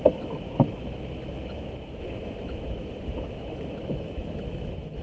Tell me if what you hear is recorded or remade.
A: remade